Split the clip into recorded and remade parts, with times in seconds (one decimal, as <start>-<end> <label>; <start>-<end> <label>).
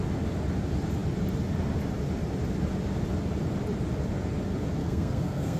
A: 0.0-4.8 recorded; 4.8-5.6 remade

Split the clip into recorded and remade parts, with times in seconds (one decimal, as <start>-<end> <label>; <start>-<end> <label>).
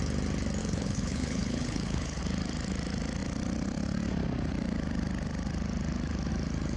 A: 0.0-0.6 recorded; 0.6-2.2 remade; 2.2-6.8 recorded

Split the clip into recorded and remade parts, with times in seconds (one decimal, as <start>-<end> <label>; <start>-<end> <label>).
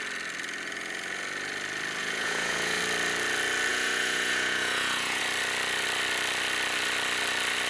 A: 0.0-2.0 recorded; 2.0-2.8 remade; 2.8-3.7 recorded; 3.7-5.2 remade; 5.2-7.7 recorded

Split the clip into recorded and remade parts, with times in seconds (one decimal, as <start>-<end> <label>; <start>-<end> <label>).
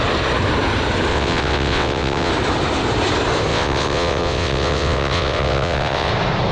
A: 0.0-1.1 recorded; 1.1-2.3 remade; 2.3-3.5 recorded; 3.5-6.1 remade; 6.1-6.5 recorded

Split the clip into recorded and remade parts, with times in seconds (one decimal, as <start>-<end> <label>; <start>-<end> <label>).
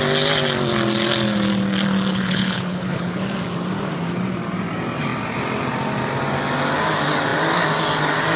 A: 0.0-2.1 recorded; 2.1-3.2 remade; 3.2-8.4 recorded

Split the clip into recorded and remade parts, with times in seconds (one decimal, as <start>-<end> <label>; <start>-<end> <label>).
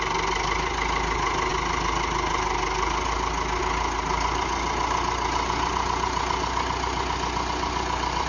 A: 0.0-8.3 recorded